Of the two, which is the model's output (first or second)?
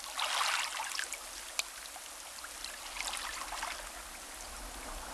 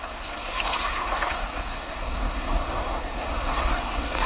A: second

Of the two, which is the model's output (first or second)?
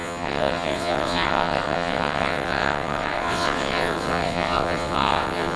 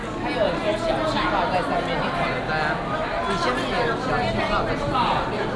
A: first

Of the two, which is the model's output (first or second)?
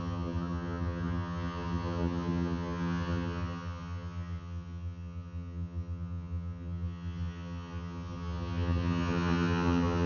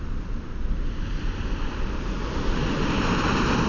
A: first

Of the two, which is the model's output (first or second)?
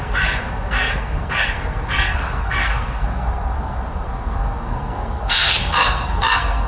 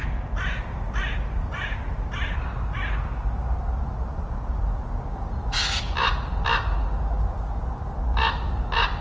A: first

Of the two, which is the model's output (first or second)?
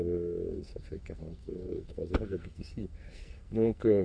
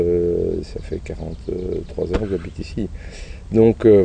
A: first